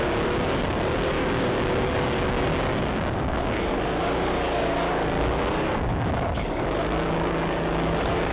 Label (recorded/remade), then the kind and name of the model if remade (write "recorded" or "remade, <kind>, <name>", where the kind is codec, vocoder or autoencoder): remade, codec, DAC